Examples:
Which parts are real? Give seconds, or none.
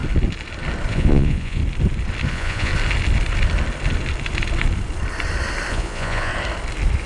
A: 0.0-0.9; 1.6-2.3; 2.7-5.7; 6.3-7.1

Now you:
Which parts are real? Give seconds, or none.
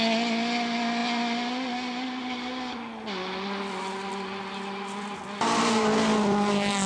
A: 0.0-6.9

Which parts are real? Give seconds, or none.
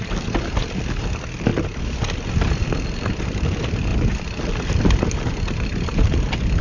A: 0.0-6.6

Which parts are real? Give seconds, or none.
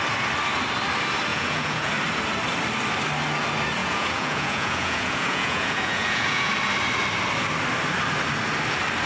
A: 0.0-1.3; 1.9-3.8; 6.5-9.1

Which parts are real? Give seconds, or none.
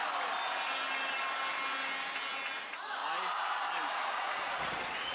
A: 0.0-2.6; 3.0-3.9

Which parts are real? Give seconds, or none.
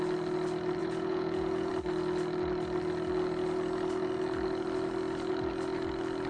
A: 0.0-0.8; 1.7-6.3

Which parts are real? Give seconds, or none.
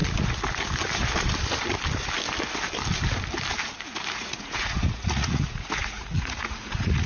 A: 0.0-4.1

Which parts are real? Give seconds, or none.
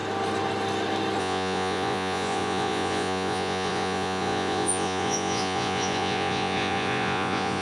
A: 0.0-1.2